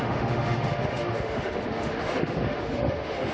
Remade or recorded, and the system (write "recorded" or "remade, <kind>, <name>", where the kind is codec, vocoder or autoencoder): remade, autoencoder, DAC-VAE